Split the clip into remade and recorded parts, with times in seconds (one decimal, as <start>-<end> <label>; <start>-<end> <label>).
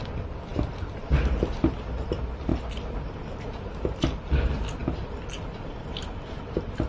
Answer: 0.0-6.9 recorded